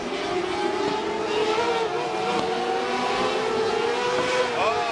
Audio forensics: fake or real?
real